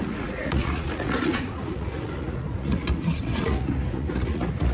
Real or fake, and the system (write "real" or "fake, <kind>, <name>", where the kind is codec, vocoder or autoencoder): fake, vocoder, Vocos